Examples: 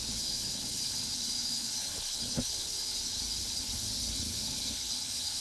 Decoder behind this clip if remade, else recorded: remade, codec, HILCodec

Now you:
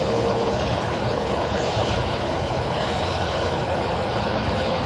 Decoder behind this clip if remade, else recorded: remade, codec, HILCodec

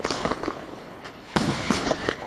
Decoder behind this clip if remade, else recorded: remade, codec, HILCodec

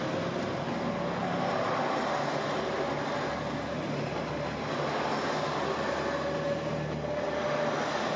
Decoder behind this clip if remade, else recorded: recorded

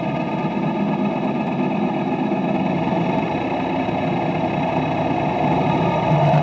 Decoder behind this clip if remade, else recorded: recorded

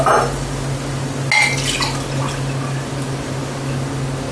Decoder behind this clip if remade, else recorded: recorded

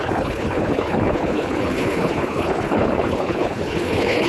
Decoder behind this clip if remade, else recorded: remade, codec, HILCodec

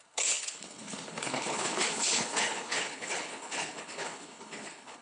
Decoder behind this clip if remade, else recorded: remade, codec, HILCodec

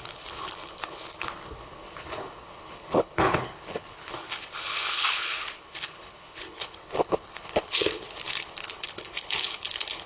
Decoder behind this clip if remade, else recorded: remade, codec, HILCodec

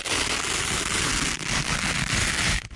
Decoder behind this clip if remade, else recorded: recorded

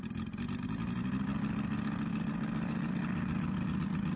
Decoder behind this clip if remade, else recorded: recorded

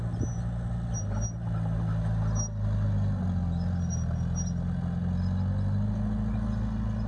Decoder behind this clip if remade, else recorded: recorded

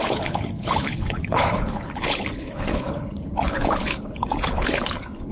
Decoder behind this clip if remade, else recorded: remade, codec, HILCodec